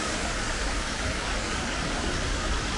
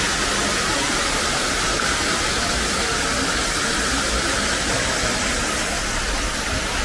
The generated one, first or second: first